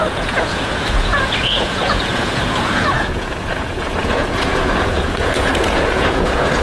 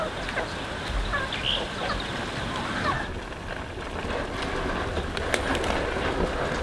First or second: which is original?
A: second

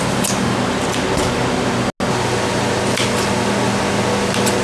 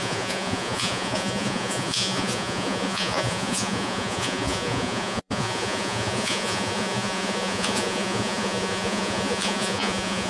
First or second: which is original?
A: first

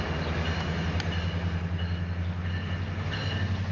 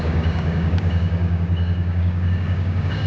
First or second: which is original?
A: first